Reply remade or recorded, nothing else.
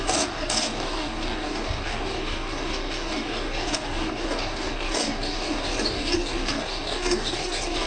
remade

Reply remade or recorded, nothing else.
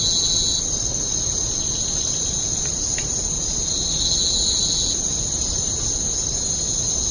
recorded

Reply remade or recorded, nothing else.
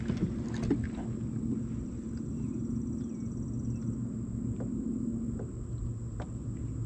recorded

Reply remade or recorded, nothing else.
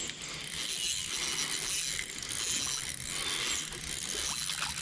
recorded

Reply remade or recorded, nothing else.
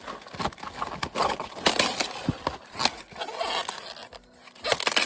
recorded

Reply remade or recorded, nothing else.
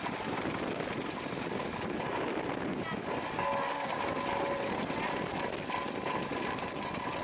recorded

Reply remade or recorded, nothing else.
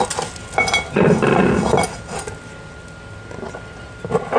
recorded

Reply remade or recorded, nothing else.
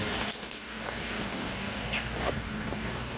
remade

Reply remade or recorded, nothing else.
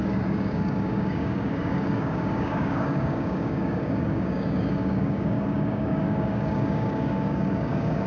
remade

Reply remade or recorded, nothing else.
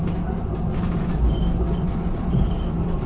recorded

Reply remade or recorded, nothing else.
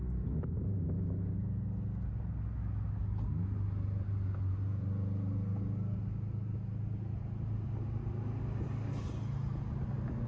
recorded